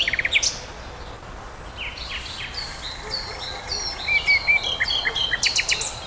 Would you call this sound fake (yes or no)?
no